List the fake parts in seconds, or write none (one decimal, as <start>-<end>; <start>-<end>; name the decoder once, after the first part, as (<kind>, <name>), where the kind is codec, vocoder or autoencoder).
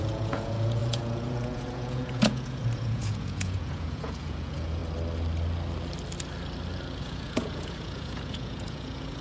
0.0-4.8 (vocoder, Vocos); 7.0-9.2